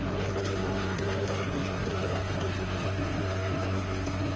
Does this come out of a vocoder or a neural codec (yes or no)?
yes